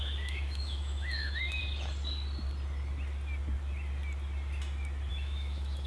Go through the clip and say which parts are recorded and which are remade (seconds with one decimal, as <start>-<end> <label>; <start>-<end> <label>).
0.0-1.6 remade; 1.6-5.1 recorded; 5.1-5.9 remade

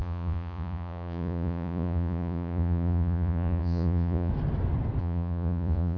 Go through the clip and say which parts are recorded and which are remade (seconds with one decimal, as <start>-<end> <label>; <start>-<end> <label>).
0.0-4.3 remade; 4.3-5.0 recorded; 5.0-6.0 remade

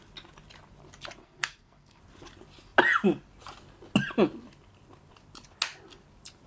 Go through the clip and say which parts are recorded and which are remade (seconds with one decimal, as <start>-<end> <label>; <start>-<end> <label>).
0.0-1.2 recorded; 1.2-2.0 remade; 2.0-6.5 recorded

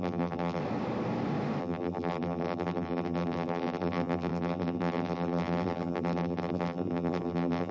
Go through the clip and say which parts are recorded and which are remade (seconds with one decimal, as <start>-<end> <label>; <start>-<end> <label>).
0.0-0.6 remade; 0.6-1.6 recorded; 1.6-7.7 remade